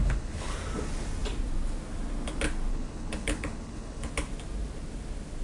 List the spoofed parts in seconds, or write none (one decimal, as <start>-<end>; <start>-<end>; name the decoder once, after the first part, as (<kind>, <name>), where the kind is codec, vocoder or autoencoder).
0.0-0.5 (codec, HILCodec); 2.7-4.1